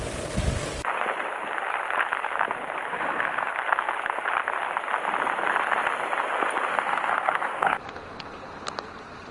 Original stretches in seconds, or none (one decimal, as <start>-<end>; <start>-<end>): 0.0-2.9; 3.5-6.7; 7.8-9.3